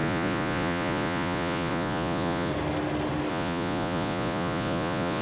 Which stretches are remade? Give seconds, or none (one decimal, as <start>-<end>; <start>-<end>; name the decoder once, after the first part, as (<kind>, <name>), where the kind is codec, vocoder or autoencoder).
0.0-2.5 (vocoder, Vocos); 3.3-5.2